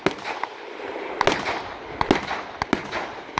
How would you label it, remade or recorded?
recorded